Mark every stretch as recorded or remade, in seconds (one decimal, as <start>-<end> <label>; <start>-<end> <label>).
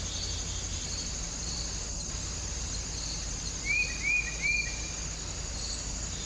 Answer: 0.0-0.7 recorded; 0.7-3.9 remade; 3.9-6.3 recorded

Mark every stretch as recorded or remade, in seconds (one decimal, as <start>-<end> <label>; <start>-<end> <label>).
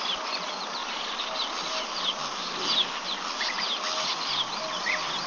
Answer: 0.0-0.8 remade; 0.8-3.6 recorded; 3.6-4.3 remade; 4.3-5.3 recorded